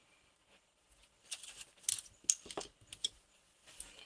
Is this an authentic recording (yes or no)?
yes